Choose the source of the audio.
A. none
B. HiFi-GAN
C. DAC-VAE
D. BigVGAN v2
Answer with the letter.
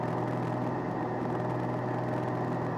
A